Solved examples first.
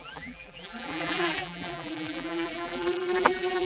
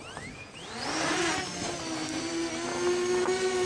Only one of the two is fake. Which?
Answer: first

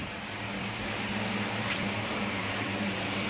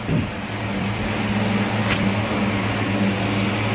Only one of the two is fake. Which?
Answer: first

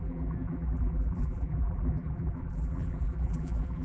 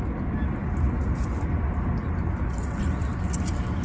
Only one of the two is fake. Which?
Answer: first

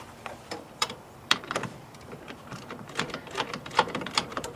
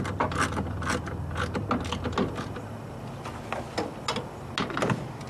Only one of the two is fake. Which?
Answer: first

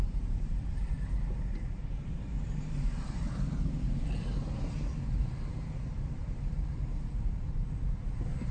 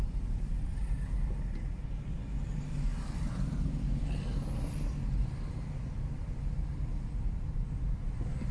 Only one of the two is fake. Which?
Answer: first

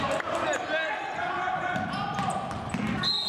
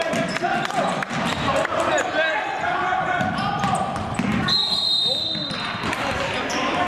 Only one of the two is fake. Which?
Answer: second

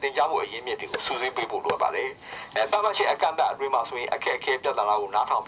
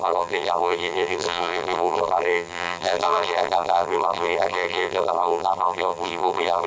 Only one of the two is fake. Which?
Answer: second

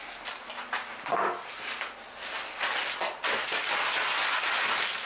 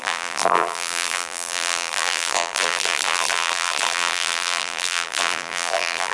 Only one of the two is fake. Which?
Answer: second